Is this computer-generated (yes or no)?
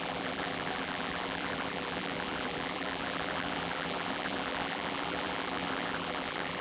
yes